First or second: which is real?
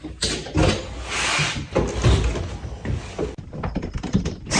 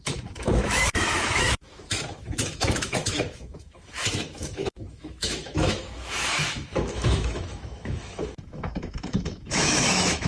first